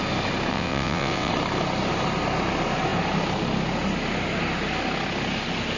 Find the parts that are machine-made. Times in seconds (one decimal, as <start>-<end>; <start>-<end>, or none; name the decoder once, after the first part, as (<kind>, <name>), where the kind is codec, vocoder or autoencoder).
0.5-1.3 (vocoder, WaveNeXt)